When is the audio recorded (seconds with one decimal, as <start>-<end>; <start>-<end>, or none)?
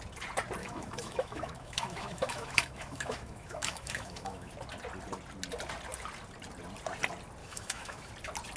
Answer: 0.0-0.6; 4.5-7.4; 8.1-8.6